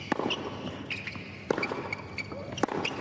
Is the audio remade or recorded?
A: recorded